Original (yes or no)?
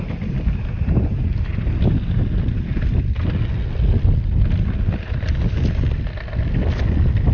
yes